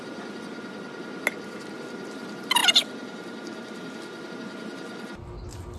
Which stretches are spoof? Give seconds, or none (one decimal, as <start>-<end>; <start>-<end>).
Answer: 2.6-4.3; 4.7-5.2